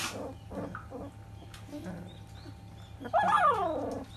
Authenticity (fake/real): real